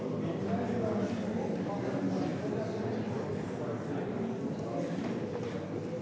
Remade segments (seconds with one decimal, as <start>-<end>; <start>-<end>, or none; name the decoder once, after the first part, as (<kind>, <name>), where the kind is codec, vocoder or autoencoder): none